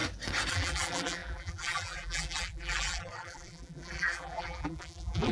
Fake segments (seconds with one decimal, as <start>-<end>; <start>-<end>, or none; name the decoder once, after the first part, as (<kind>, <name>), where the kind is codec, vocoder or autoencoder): 0.5-5.3 (vocoder, BigVGAN v2)